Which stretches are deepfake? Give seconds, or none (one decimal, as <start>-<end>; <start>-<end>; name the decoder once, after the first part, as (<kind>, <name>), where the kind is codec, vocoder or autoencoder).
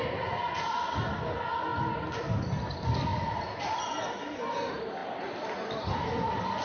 none